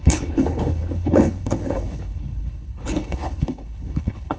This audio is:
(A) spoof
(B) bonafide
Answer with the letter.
A